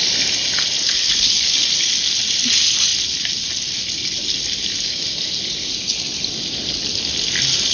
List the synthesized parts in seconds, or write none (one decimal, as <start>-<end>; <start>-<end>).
0.8-1.9